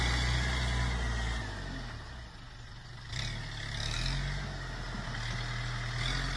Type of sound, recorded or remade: recorded